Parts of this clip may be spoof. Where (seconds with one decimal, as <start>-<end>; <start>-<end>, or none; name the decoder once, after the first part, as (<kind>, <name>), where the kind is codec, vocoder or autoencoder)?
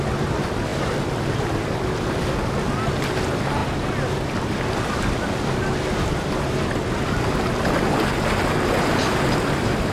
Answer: none